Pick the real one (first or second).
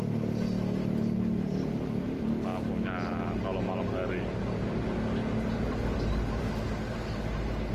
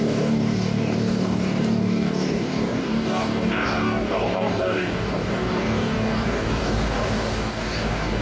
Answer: first